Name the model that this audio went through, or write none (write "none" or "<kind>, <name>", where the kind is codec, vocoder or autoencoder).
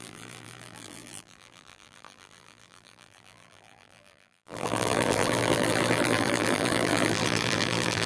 vocoder, BigVGAN v2